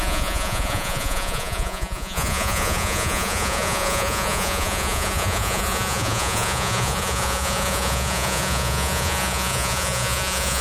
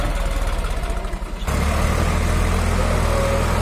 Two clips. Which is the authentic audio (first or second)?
second